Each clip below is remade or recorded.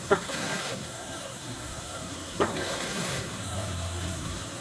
remade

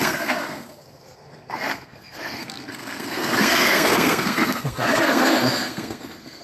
remade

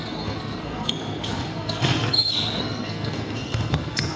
remade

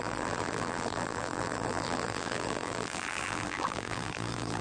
remade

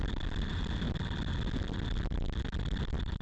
recorded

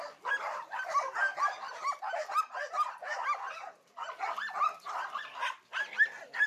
recorded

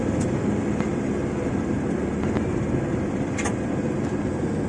recorded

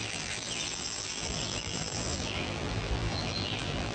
remade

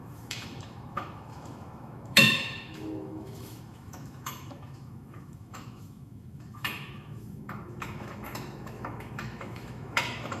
remade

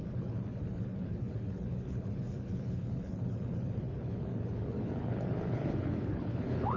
remade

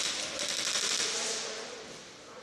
recorded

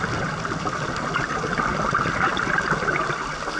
recorded